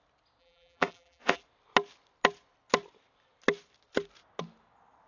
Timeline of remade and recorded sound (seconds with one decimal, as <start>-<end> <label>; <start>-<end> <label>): 0.0-0.4 recorded; 0.4-1.4 remade; 1.4-5.1 recorded